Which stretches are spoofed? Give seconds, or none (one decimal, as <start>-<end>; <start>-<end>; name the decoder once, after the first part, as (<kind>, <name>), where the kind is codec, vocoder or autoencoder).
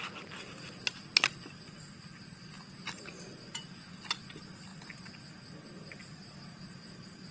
none